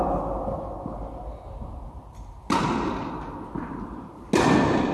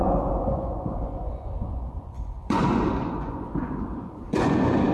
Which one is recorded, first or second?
first